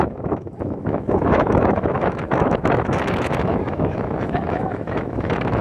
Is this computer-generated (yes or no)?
yes